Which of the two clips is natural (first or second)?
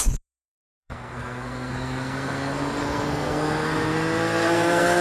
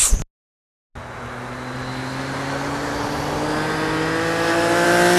second